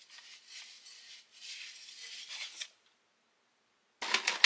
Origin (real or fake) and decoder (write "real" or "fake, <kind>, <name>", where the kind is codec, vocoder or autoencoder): real